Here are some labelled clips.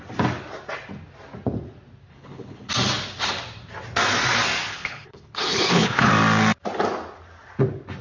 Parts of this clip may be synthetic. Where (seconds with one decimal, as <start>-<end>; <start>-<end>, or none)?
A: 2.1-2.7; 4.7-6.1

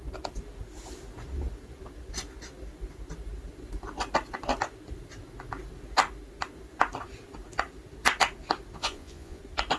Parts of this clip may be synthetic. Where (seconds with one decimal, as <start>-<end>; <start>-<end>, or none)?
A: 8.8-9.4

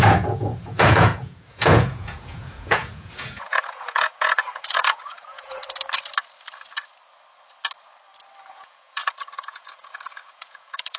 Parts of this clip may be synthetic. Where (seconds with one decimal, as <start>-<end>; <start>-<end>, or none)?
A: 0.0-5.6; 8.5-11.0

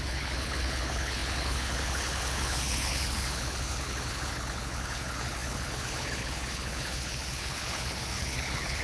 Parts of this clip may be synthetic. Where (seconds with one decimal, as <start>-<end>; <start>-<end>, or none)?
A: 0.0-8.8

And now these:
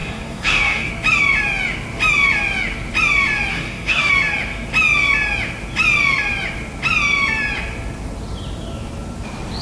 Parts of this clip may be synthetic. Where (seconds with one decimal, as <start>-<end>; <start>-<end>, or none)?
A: 0.0-0.9; 3.5-4.1

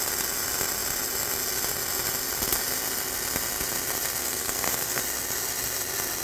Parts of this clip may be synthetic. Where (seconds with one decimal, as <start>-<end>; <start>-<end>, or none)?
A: 4.2-5.0

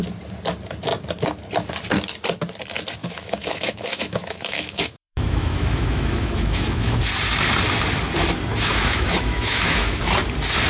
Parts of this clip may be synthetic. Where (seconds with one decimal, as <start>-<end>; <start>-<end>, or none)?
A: 3.0-7.0; 8.5-10.0

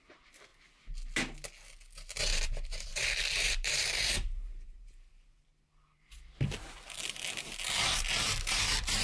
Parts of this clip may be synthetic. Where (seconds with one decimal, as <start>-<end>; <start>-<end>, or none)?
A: 0.0-0.5; 2.1-5.5; 8.4-9.0